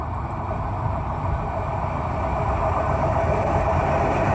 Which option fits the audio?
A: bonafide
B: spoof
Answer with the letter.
A